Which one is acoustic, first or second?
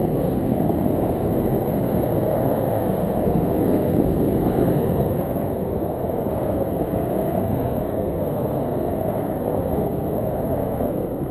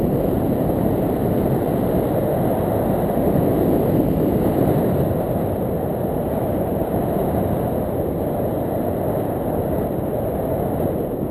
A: second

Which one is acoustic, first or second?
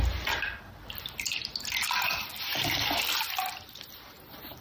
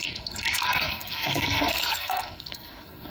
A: first